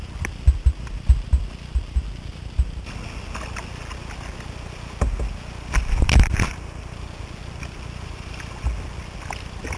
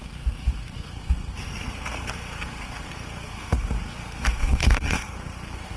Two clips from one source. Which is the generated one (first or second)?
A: second